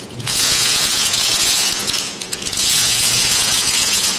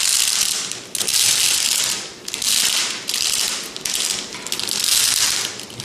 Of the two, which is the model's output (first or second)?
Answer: first